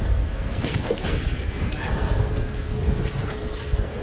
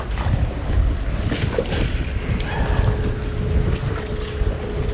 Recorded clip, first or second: second